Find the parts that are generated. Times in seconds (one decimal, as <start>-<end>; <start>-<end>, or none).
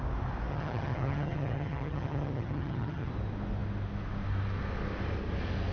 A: 0.5-3.1